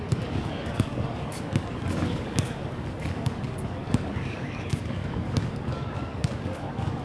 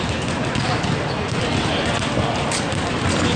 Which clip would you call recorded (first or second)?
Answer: second